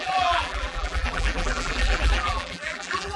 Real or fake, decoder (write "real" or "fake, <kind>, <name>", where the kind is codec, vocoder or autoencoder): fake, vocoder, BigVGAN v2